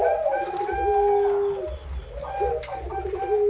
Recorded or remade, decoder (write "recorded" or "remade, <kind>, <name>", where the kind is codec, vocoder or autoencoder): recorded